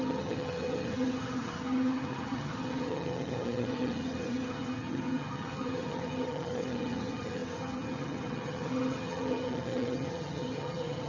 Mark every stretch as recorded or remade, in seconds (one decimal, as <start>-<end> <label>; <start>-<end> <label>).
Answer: 0.0-11.1 remade